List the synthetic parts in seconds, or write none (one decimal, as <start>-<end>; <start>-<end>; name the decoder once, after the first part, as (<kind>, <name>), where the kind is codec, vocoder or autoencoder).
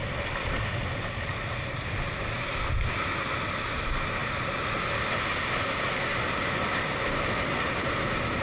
none